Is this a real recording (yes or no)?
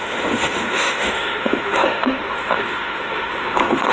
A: no